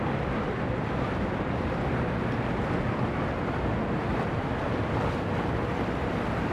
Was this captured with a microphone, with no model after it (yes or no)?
no